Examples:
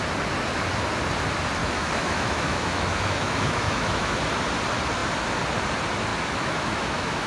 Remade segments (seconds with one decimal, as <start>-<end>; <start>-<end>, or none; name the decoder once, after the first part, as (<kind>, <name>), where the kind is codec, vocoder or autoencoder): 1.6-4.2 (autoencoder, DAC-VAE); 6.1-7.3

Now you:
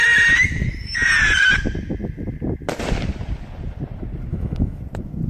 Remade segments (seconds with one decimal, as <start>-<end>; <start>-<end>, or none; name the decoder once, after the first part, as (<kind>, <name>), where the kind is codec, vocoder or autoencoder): 4.3-4.8 (autoencoder, DAC-VAE)

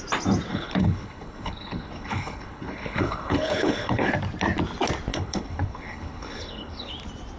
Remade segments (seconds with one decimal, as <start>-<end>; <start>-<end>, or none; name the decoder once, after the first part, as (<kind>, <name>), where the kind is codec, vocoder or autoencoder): 0.5-4.1 (codec, HILCodec); 5.1-6.9